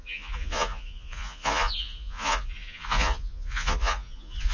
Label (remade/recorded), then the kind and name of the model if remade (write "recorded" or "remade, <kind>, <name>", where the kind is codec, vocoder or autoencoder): remade, vocoder, Vocos